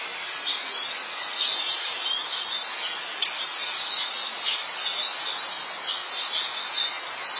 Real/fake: real